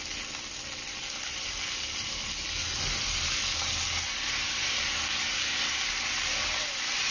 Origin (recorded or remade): recorded